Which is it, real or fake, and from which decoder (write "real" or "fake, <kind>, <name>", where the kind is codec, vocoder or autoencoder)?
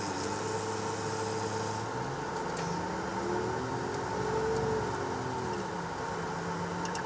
real